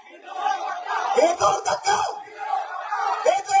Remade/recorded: remade